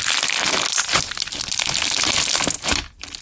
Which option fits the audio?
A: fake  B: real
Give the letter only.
B